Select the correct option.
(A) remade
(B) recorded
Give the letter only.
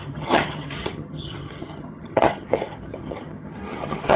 A